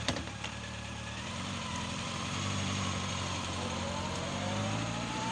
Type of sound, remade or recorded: remade